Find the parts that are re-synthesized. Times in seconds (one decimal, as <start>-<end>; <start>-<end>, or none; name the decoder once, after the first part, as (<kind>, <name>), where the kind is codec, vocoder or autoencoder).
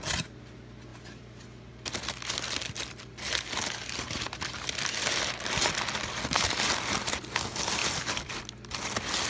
0.9-1.7 (vocoder, BigVGAN v2); 7.8-8.3